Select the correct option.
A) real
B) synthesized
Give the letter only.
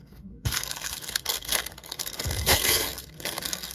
B